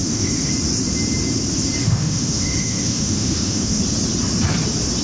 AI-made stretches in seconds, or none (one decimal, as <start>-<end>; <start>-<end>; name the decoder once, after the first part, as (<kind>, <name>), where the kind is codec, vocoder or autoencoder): 0.0-0.5 (autoencoder, DAC-VAE); 1.8-3.8